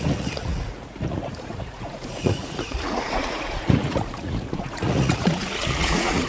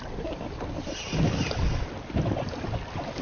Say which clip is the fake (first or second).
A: first